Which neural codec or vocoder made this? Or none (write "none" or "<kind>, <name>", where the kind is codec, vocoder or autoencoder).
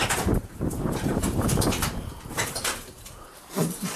vocoder, BigVGAN v2